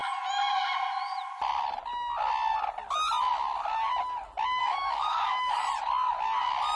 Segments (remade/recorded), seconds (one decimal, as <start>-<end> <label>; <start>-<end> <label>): 0.0-4.6 recorded; 4.6-5.6 remade; 5.6-6.8 recorded

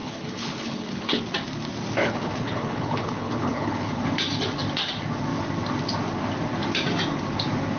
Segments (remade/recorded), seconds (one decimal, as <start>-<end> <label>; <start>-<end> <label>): 0.0-1.2 remade; 1.2-2.0 recorded; 2.0-4.0 remade; 4.0-7.8 recorded

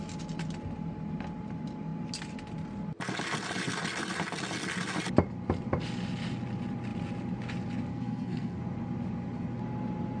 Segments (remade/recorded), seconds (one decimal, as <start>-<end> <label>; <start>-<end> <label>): 0.0-7.9 recorded; 7.9-8.6 remade; 8.6-10.2 recorded